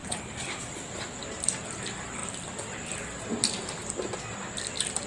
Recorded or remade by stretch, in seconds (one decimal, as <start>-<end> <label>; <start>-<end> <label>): 0.0-1.2 remade; 1.2-2.2 recorded; 2.2-3.2 remade; 3.2-5.1 recorded